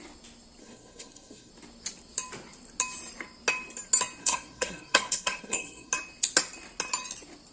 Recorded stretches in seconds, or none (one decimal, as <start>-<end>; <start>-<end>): 0.0-0.6; 1.5-4.2; 5.9-7.5